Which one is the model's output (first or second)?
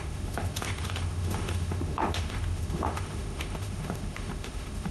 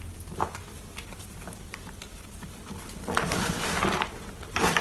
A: first